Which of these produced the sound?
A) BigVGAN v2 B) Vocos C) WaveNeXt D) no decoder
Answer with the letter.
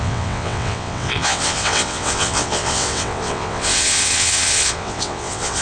C